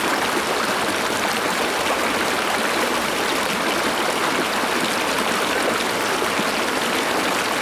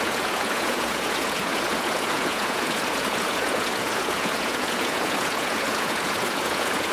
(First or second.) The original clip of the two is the first